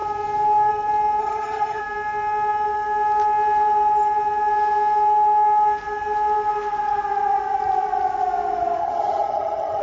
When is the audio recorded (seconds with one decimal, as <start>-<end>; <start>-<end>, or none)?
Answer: 0.0-1.2; 1.8-8.8